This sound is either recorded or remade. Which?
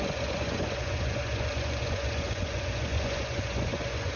remade